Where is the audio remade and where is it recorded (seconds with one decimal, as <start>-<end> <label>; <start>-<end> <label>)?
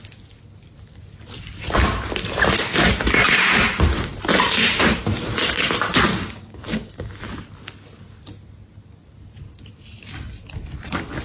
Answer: 0.0-6.1 recorded; 6.1-7.2 remade; 7.2-11.2 recorded